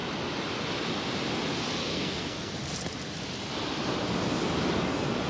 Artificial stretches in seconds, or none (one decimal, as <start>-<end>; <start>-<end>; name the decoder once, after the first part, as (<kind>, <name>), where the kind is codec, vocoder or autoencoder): 1.9-2.5 (codec, SNAC)